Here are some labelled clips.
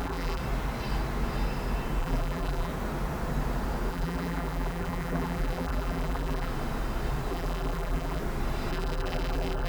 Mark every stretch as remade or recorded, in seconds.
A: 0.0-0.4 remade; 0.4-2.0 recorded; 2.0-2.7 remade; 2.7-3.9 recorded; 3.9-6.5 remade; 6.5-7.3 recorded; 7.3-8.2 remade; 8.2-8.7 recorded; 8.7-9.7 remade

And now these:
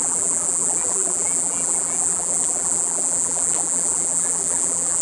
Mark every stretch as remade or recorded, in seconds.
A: 0.0-5.0 remade

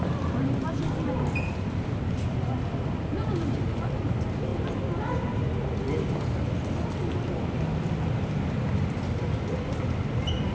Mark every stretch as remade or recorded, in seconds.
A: 0.0-10.5 recorded

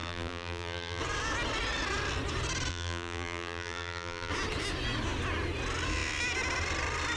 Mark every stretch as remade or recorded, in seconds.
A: 0.0-1.0 remade; 1.0-2.7 recorded; 2.7-4.3 remade; 4.3-7.2 recorded